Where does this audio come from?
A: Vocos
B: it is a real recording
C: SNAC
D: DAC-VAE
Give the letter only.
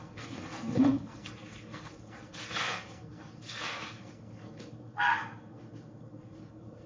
C